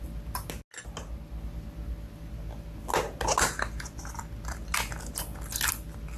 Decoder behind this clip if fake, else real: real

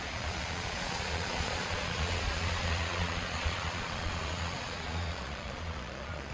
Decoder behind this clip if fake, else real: fake, vocoder, Vocos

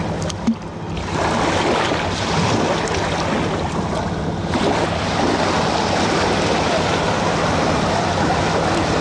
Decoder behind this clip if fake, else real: real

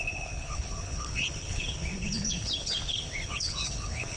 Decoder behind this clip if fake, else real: fake, codec, HILCodec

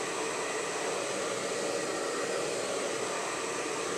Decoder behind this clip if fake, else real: real